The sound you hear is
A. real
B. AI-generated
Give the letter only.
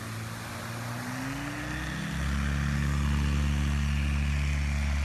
A